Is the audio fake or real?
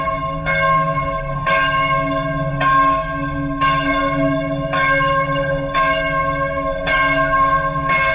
fake